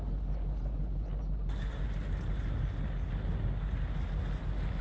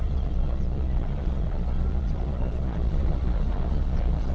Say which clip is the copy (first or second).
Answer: second